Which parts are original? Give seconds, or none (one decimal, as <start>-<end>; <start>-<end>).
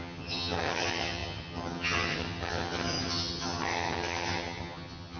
none